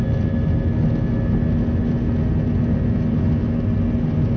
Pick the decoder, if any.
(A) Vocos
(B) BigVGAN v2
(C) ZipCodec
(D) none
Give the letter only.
D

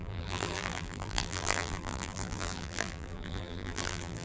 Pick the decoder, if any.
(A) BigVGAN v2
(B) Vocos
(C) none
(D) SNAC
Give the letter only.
A